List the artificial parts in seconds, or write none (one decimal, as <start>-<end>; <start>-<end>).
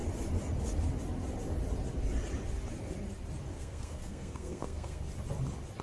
3.5-5.0